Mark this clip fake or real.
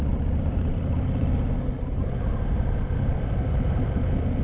fake